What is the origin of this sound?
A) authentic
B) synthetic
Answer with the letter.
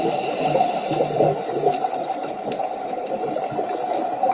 A